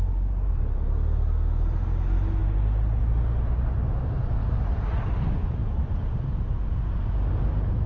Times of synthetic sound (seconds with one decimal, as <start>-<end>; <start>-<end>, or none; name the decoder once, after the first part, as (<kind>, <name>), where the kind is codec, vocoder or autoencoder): 4.4-5.1 (vocoder, BigVGAN v2); 5.6-6.6